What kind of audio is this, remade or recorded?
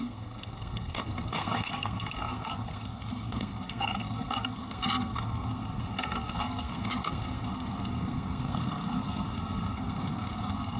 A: remade